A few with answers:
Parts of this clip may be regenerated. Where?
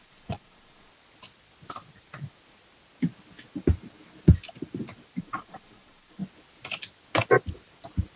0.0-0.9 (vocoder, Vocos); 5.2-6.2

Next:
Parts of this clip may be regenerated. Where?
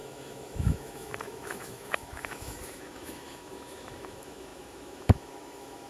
0.0-5.9 (autoencoder, DAC-VAE)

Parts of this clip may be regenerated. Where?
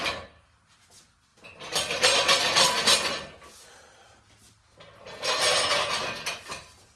1.3-4.4 (vocoder, BigVGAN v2)